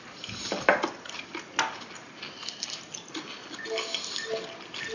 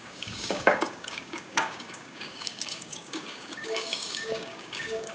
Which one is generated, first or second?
second